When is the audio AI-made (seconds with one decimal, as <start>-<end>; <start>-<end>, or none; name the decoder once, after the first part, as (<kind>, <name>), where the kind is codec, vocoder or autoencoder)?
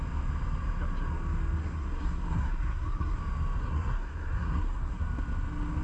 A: 1.6-3.2 (codec, SNAC); 3.6-5.0